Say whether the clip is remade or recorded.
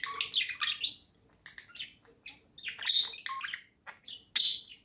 recorded